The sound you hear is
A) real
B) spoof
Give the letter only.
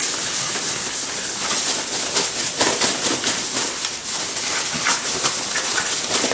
A